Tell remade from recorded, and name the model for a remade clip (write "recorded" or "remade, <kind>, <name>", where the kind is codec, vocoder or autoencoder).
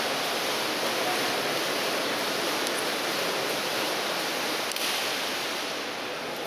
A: recorded